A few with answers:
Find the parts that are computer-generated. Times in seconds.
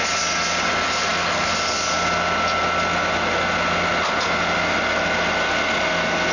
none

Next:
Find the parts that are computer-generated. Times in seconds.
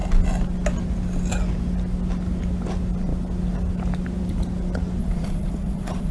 5.0-6.1 (vocoder, Vocos)